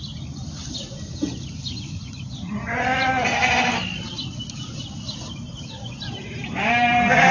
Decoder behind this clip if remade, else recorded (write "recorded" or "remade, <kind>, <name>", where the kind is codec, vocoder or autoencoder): recorded